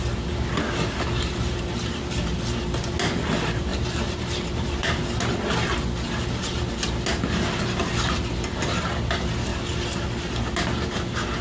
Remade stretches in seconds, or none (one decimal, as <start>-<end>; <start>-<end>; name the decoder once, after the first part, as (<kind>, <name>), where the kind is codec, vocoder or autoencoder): 3.7-5.0 (vocoder, BigVGAN v2); 9.5-10.3